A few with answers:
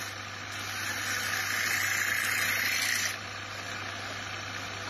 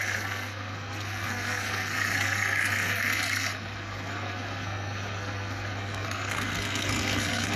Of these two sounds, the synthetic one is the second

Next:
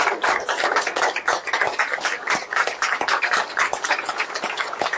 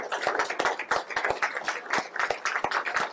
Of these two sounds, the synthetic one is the first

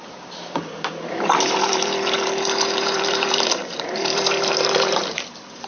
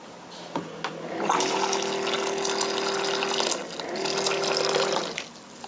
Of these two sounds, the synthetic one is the first